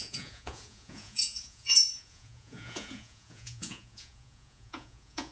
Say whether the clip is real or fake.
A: fake